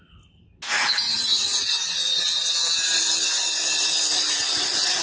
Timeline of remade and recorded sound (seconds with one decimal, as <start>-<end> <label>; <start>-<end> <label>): 0.0-1.5 recorded; 1.5-2.2 remade; 2.2-5.0 recorded